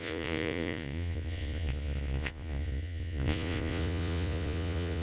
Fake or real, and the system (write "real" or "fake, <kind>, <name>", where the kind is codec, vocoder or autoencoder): fake, vocoder, Vocos